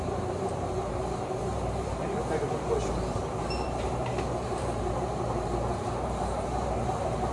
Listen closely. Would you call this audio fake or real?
fake